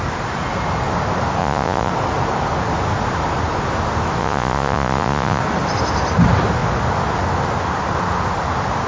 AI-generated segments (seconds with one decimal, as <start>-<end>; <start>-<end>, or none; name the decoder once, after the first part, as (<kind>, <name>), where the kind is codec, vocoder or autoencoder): 1.4-1.9 (vocoder, Vocos); 4.2-5.4

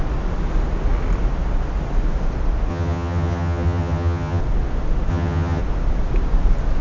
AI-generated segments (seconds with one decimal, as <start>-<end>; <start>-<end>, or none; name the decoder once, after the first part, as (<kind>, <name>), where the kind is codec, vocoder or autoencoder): 2.7-4.4 (vocoder, HiFi-GAN); 5.1-5.6

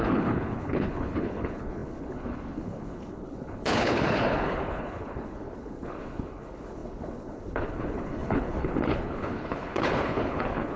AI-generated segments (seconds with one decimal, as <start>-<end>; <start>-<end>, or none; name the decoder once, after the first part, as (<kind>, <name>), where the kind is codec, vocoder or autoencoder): 0.0-10.8 (codec, HILCodec)

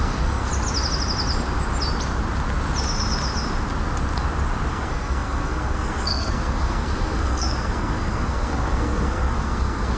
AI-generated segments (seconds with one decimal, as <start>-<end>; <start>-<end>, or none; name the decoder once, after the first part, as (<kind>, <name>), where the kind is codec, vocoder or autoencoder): 0.0-0.5 (codec, SNAC); 4.7-10.0